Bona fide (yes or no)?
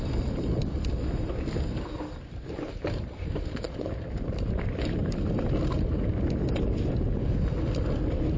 yes